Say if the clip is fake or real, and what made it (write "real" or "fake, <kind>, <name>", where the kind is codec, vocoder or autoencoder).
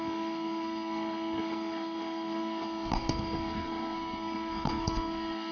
fake, codec, SNAC